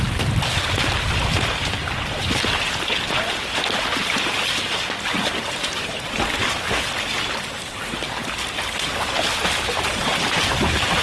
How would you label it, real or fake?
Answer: real